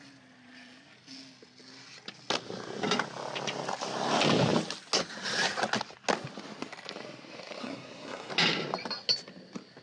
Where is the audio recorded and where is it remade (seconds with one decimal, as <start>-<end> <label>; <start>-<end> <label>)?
0.0-7.6 recorded; 7.6-8.3 remade; 8.3-9.8 recorded